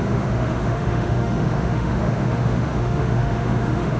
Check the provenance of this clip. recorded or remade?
remade